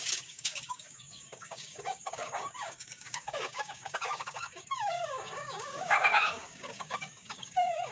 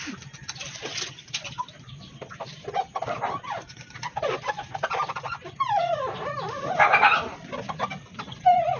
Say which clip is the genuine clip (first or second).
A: second